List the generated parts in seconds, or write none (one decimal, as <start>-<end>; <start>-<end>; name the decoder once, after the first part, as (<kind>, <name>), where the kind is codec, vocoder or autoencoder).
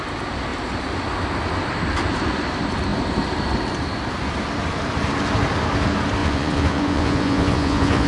6.2-8.1 (vocoder, Vocos)